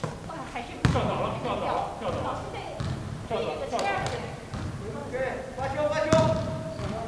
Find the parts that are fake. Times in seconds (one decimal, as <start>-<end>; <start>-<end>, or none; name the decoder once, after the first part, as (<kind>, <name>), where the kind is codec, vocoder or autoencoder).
none